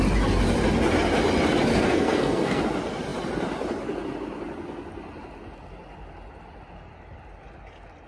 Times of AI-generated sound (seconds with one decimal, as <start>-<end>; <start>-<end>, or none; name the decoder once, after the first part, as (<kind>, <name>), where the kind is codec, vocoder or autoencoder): 1.7-2.6 (codec, SNAC)